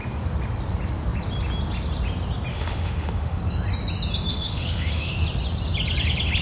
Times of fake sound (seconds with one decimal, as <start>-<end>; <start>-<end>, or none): 2.5-3.4; 4.3-5.1